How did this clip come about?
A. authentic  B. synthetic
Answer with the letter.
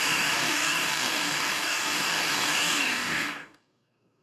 B